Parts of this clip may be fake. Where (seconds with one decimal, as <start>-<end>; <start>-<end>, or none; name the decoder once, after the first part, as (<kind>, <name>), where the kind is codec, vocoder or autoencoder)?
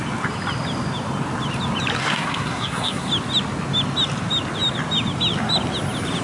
2.0-3.1 (codec, SNAC)